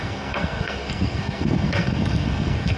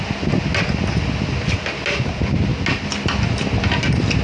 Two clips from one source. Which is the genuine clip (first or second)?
second